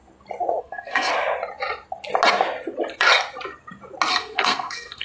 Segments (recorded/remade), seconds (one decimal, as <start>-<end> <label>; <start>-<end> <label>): 0.0-0.6 recorded; 0.6-1.1 remade; 1.1-4.1 recorded; 4.1-5.0 remade